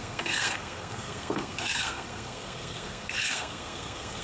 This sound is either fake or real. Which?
fake